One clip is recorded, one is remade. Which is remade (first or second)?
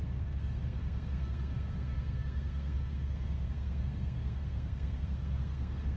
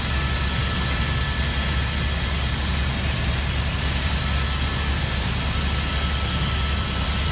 first